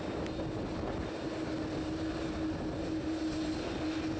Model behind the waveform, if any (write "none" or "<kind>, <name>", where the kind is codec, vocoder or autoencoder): none